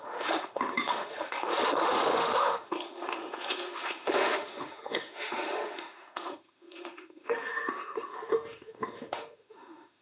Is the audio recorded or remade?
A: remade